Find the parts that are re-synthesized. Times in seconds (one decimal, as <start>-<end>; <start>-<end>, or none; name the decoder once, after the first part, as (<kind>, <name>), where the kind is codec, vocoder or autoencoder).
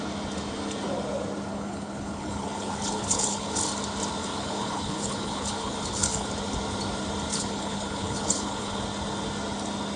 1.5-3.6 (codec, HILCodec); 4.2-6.3; 7.3-8.8